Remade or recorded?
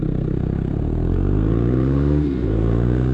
remade